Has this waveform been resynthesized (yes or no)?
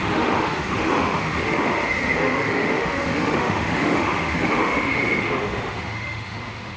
yes